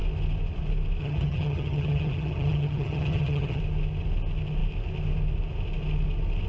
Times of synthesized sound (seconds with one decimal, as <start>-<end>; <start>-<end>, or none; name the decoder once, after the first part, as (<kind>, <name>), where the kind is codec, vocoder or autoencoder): 1.0-3.6 (vocoder, HiFi-GAN)